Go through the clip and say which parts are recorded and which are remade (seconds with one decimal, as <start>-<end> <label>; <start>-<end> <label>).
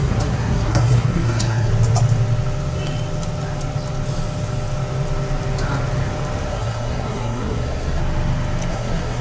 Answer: 0.0-1.7 remade; 1.7-6.5 recorded; 6.5-8.0 remade; 8.0-8.7 recorded; 8.7-9.2 remade